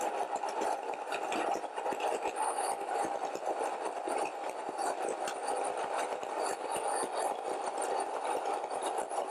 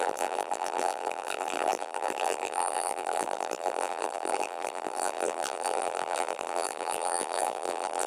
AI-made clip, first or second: second